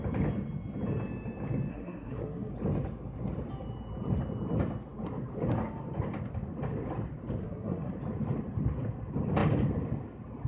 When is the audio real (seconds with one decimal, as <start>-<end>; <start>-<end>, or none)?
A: 0.0-1.7; 2.5-7.4; 7.9-10.5